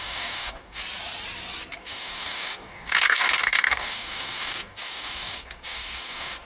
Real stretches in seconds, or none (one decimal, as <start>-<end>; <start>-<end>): 0.8-1.8